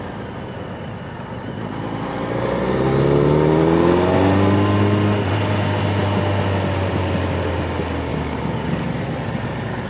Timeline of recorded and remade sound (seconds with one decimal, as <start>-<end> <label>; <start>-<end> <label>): 0.0-8.1 recorded; 8.1-8.9 remade; 8.9-9.9 recorded

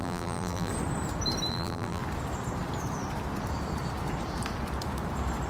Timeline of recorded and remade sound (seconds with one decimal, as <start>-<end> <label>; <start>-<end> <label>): 0.0-0.7 remade; 0.7-1.5 recorded; 1.5-2.0 remade; 2.0-5.5 recorded

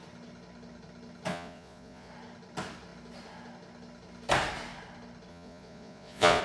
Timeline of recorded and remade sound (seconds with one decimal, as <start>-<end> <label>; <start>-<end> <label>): 0.0-1.3 recorded; 1.3-2.1 remade; 2.1-5.3 recorded; 5.3-6.4 remade

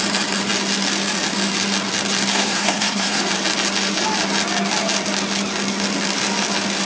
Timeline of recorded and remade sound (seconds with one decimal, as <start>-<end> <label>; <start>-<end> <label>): 0.0-2.3 recorded; 2.3-3.2 remade; 3.2-6.8 recorded

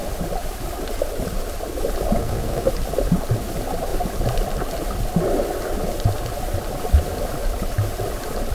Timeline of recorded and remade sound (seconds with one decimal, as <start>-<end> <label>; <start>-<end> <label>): 0.0-2.2 recorded; 2.2-2.7 remade; 2.7-8.5 recorded

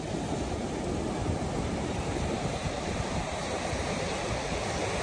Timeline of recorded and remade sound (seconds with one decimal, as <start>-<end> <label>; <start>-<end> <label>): 0.0-1.2 recorded; 1.2-4.2 remade; 4.2-5.0 recorded